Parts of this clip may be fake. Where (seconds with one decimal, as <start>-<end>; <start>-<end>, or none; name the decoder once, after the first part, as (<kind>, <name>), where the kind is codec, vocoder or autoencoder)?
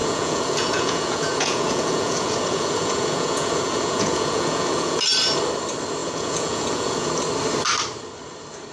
0.0-5.0 (vocoder, Vocos); 6.0-7.1